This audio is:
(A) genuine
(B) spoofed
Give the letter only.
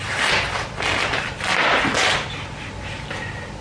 A